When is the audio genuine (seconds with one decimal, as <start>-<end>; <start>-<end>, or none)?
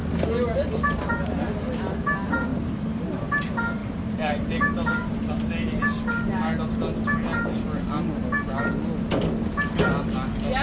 0.0-2.5; 3.2-3.8; 5.2-10.6